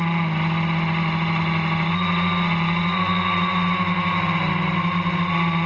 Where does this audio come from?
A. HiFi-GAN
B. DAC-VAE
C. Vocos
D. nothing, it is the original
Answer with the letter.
D